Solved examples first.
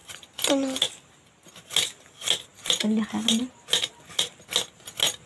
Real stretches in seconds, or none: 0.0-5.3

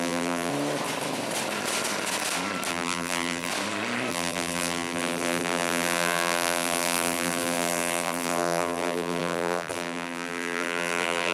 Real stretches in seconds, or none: 0.5-2.7; 3.5-4.1

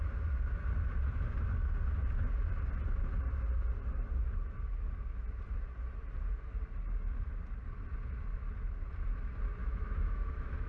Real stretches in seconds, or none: 0.0-9.6

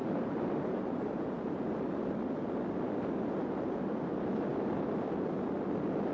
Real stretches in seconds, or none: 1.8-6.1